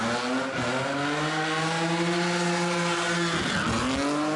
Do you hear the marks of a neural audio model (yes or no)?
no